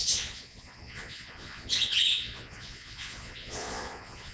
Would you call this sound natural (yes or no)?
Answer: no